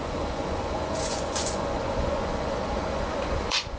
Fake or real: fake